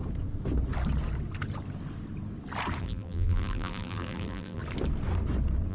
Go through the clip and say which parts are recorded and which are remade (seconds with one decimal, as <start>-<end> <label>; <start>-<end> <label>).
0.0-2.8 recorded; 2.8-4.6 remade; 4.6-5.7 recorded